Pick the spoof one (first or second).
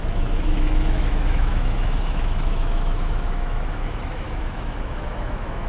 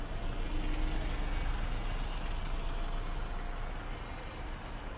first